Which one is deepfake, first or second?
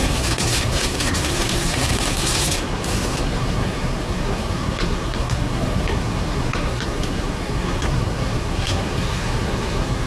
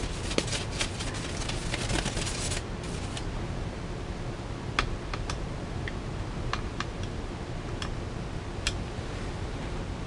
first